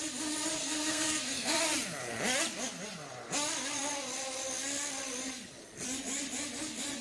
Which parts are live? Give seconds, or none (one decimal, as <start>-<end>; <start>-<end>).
0.0-0.6; 1.6-7.0